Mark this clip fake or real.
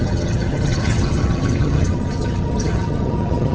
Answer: fake